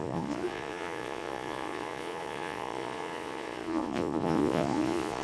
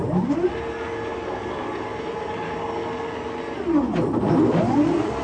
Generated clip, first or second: first